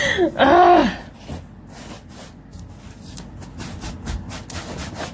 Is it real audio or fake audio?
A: real